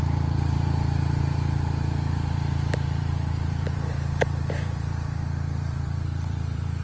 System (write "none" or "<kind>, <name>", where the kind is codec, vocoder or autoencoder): vocoder, BigVGAN v2